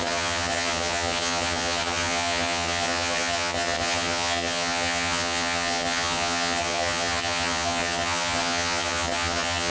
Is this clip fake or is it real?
fake